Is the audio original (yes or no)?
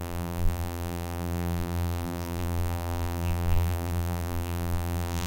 no